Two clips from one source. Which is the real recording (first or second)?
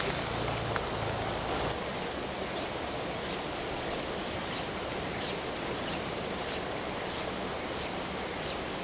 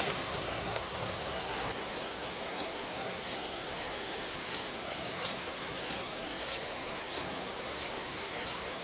first